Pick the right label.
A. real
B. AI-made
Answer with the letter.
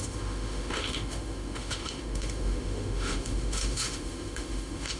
B